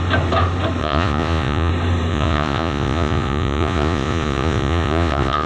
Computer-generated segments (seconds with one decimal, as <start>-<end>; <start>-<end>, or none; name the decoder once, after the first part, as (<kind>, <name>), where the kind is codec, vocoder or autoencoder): 0.8-1.7 (vocoder, Vocos); 2.1-5.5